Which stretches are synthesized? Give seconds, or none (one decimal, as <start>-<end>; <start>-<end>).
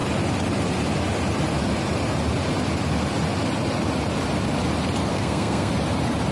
5.1-5.7